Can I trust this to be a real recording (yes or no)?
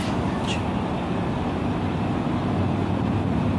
yes